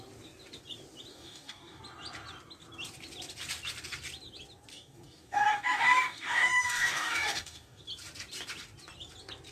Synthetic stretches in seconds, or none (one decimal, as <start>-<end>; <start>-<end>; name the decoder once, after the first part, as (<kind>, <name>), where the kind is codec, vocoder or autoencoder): 1.1-1.8 (codec, DAC); 4.7-7.8